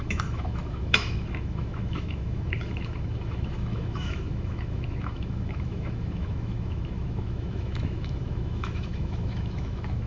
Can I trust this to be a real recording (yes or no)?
no